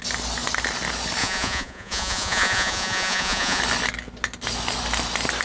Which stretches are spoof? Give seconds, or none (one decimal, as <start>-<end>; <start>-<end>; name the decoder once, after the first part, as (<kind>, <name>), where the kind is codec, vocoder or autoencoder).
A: 1.2-3.6 (vocoder, Vocos)